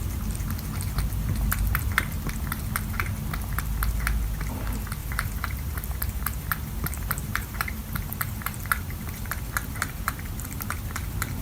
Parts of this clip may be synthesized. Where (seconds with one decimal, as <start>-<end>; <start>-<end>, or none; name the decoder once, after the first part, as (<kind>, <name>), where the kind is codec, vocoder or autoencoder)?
5.0-9.3 (vocoder, BigVGAN v2)